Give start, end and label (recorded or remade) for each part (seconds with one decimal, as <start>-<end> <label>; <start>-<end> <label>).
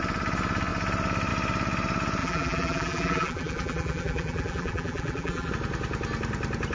0.0-2.2 recorded; 2.2-5.5 remade; 5.5-6.7 recorded